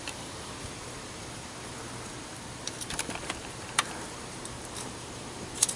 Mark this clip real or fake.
fake